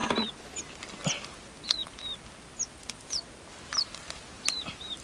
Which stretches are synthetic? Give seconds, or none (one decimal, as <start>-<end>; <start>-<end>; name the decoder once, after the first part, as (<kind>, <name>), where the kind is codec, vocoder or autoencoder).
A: none